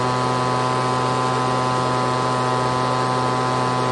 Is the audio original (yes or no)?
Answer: yes